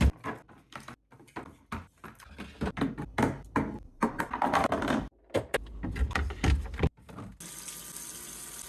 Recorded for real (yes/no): yes